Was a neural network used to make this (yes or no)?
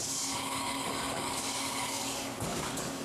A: yes